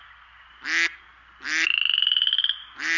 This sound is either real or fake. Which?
real